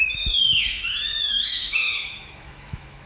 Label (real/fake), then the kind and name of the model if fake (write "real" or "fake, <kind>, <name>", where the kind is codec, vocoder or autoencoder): fake, autoencoder, DAC-VAE